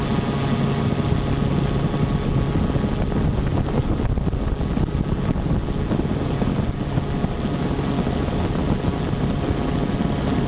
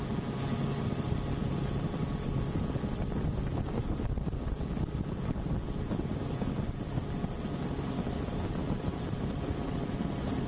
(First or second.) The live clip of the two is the first